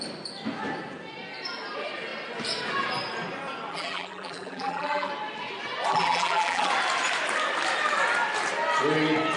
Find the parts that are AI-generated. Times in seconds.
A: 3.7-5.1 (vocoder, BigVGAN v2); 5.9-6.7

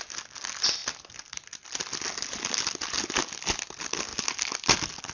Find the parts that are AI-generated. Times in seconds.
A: none

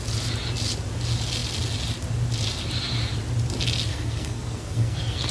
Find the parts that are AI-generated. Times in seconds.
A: 3.9-5.3 (codec, SNAC)

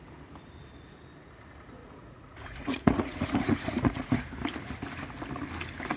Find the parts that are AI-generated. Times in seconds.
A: 1.8-4.1 (vocoder, Vocos)

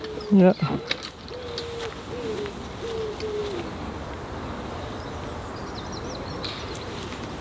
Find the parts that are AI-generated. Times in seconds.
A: none

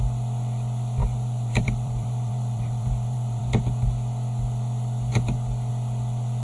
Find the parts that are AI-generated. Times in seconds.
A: 1.0-3.4 (vocoder, BigVGAN v2)